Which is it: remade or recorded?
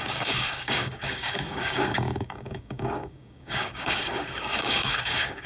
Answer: remade